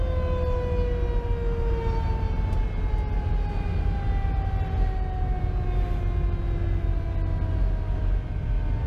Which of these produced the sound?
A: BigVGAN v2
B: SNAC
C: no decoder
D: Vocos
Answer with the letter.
C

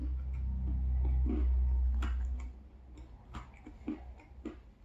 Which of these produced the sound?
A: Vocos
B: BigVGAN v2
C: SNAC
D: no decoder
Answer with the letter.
D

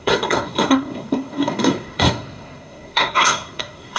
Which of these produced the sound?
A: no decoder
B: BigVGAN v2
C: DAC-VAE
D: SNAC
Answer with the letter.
D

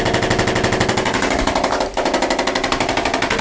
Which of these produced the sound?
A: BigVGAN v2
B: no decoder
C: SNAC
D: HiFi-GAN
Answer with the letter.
B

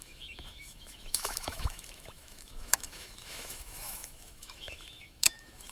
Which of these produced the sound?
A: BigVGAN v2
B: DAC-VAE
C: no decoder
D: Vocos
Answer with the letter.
B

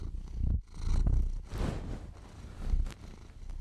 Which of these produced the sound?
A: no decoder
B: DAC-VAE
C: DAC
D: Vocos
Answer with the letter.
A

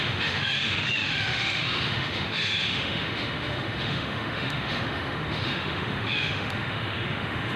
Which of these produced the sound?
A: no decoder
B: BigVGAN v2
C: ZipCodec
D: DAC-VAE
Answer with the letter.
D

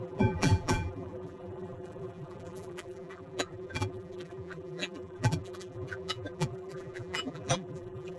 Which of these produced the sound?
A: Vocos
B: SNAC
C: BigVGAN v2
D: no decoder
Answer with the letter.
C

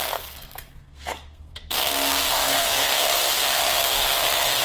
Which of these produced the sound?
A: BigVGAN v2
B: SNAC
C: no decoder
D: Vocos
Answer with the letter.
B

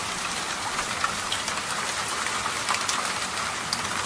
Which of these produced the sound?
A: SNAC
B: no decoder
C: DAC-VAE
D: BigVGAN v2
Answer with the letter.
D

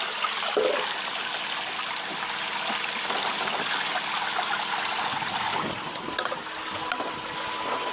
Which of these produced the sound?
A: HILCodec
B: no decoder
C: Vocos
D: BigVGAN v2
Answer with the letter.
B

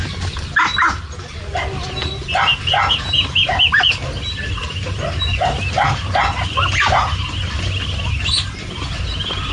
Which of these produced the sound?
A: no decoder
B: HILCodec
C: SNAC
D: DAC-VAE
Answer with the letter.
A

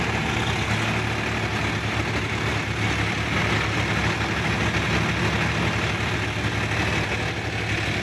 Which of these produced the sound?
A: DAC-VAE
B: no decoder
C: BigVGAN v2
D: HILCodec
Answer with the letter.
B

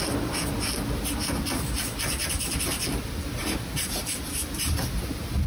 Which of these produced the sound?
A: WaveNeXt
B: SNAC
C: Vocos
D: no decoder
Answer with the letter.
D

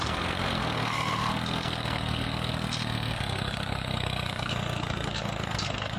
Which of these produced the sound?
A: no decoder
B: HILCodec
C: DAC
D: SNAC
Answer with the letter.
D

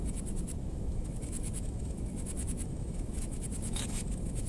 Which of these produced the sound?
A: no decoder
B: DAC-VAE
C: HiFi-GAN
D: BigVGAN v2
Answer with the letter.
B